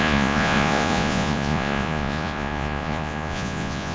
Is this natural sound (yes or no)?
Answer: no